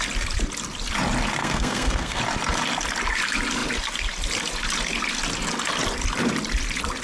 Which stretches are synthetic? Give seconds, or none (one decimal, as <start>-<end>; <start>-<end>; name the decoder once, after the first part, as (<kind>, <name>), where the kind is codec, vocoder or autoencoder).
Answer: 1.4-2.2 (codec, SNAC)